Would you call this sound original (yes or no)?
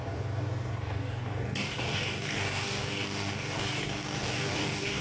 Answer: no